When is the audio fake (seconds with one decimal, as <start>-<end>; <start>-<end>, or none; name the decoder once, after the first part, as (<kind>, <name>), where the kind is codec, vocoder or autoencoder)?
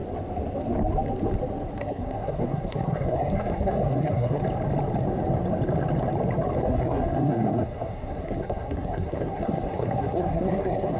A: 1.8-4.4 (codec, SNAC); 6.6-11.0